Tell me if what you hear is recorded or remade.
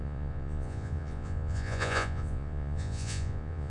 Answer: remade